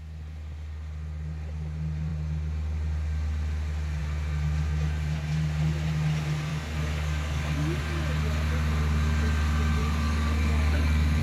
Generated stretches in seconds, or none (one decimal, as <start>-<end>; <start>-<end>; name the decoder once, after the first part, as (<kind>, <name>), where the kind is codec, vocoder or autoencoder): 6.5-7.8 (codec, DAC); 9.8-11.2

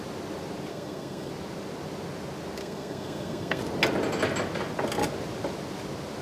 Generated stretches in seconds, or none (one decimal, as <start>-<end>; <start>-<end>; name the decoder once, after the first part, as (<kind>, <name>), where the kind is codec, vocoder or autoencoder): 0.7-1.3 (codec, SNAC); 2.6-3.6

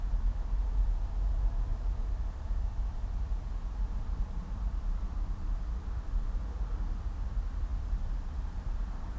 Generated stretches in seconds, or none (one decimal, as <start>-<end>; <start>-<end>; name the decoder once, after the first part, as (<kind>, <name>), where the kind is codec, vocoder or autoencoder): 1.7-6.1 (vocoder, BigVGAN v2); 7.7-9.2

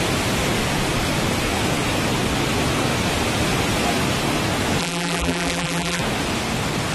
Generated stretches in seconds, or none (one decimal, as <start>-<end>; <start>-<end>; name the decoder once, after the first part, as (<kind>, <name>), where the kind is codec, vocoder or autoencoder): 4.8-6.0 (vocoder, BigVGAN v2)

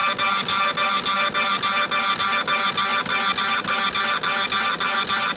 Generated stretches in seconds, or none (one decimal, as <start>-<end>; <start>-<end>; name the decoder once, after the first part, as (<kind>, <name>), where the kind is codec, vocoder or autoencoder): none